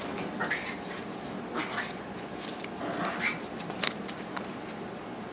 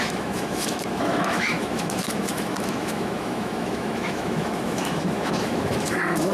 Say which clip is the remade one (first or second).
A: second